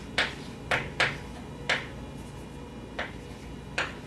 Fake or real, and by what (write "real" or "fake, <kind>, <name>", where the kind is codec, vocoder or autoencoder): real